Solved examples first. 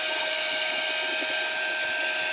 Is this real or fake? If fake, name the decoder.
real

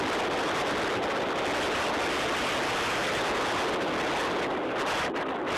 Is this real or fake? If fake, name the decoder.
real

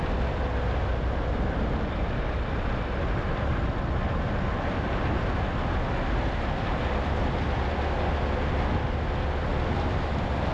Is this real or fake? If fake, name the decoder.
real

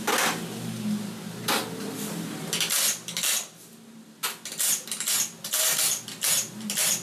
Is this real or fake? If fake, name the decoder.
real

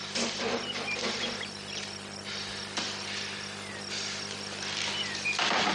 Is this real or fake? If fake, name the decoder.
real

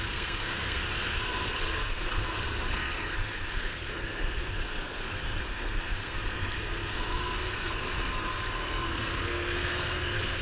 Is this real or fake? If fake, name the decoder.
fake, codec, SNAC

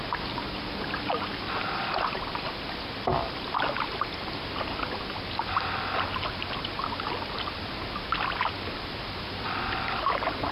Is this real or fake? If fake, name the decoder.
real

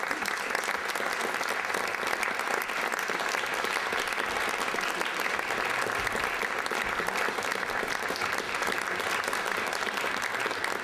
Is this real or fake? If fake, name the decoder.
real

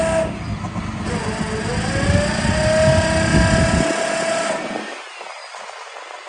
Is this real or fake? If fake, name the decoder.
real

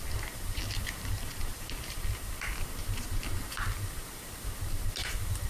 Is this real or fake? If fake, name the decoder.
real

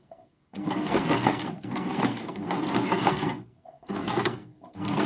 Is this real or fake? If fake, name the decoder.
fake, codec, SNAC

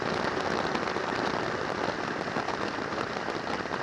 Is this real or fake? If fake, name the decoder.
real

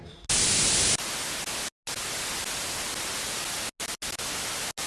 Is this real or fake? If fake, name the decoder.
real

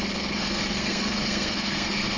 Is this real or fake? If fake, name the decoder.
fake, codec, SNAC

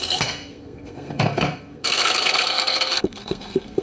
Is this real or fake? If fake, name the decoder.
fake, codec, SNAC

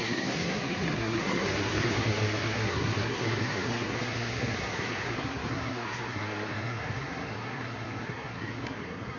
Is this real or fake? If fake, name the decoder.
fake, codec, SNAC